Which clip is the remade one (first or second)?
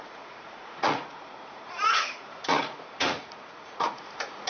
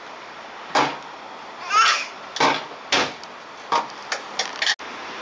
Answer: first